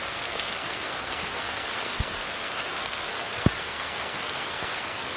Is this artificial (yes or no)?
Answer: yes